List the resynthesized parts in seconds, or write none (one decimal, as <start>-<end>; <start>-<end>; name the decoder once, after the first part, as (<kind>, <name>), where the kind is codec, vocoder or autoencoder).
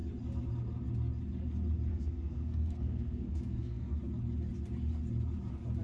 1.9-4.0 (codec, SNAC)